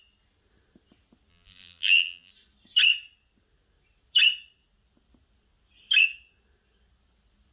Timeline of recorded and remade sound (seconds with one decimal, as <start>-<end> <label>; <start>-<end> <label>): 0.0-1.3 recorded; 1.3-2.3 remade; 2.3-7.5 recorded